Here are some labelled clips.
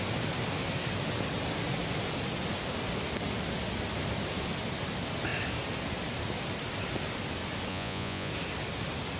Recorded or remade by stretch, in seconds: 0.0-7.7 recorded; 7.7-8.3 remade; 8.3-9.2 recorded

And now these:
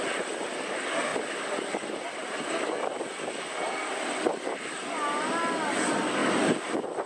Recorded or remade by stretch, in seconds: 0.0-1.1 recorded; 1.1-4.9 remade; 4.9-7.1 recorded

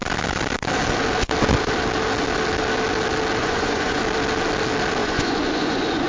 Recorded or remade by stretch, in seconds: 0.0-3.4 recorded; 3.4-4.0 remade; 4.0-5.0 recorded; 5.0-6.1 remade

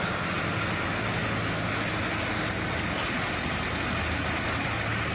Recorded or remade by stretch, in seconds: 0.0-5.1 recorded

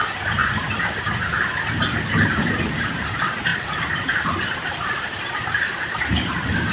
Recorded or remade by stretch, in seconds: 0.0-0.4 remade; 0.4-2.1 recorded; 2.1-6.7 remade

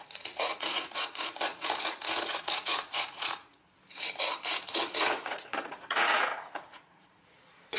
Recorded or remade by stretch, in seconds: 0.0-3.6 remade; 3.6-4.5 recorded; 4.5-7.8 remade

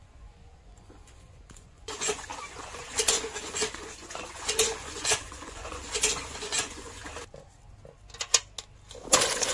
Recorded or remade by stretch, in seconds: 0.0-7.0 remade; 7.0-9.1 recorded; 9.1-9.5 remade

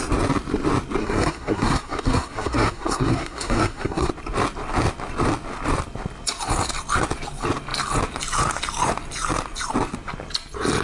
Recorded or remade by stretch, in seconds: 0.0-1.0 recorded; 1.0-4.1 remade; 4.1-10.8 recorded